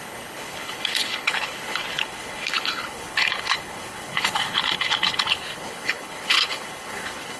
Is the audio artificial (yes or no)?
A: yes